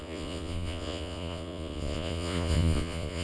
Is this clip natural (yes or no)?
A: no